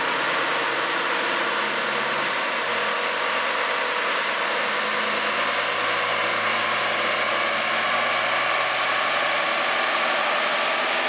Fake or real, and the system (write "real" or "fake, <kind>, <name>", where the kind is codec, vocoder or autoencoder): real